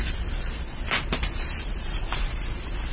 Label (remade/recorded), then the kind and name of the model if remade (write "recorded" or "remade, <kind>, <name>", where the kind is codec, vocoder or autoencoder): remade, vocoder, BigVGAN v2